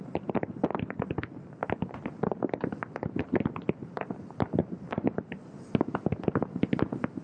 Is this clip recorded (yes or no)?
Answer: no